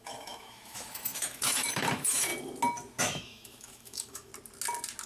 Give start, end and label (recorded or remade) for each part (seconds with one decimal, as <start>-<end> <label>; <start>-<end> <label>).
0.0-2.3 remade; 2.3-3.0 recorded; 3.0-4.3 remade; 4.3-5.1 recorded